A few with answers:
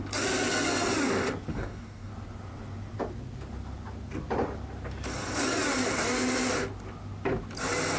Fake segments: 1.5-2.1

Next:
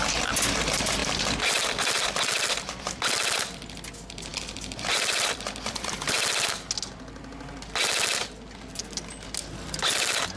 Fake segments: 1.0-3.0; 4.3-6.3

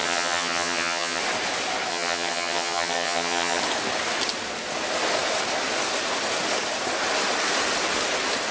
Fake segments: 0.0-1.2; 1.9-3.6

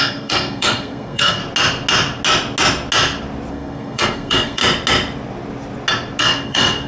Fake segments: 0.0-1.4; 3.5-4.6; 6.2-6.9

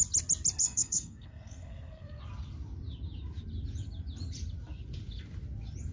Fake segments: 0.6-2.2

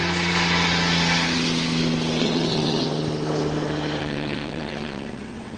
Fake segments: 2.2-2.9; 4.0-5.6

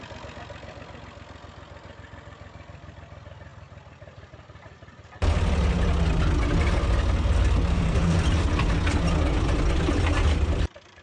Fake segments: 7.7-8.2

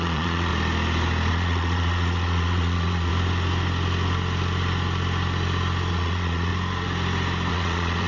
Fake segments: 0.0-0.5; 1.3-3.1; 5.9-6.5; 7.5-8.1